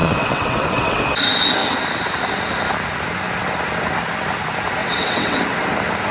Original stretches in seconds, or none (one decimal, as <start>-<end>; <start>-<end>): 1.0-4.8; 5.4-6.1